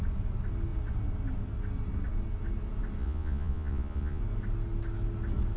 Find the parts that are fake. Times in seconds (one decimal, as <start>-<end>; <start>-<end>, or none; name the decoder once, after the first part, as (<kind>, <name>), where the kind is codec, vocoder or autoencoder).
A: 3.0-4.2 (vocoder, Vocos)